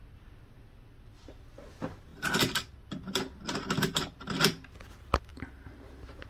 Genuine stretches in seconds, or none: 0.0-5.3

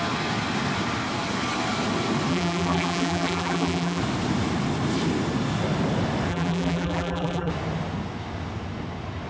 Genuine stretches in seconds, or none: 0.0-2.3; 4.0-6.3; 7.5-9.3

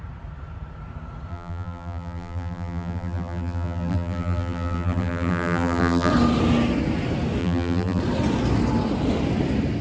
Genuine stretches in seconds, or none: 0.0-1.3; 6.1-7.4; 8.0-9.8

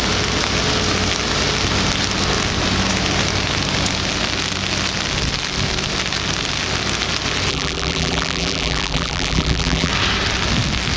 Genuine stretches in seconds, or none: 0.0-7.5; 9.9-11.0

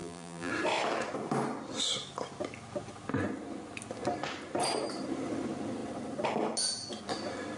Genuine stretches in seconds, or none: 0.5-7.6

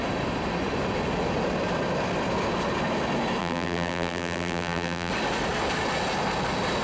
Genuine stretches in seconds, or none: 0.0-3.4; 5.1-6.8

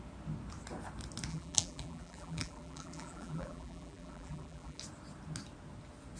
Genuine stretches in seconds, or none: 0.0-1.3; 4.8-6.2

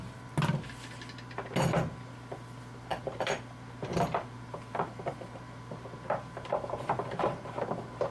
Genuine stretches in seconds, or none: 0.0-2.9; 7.5-8.1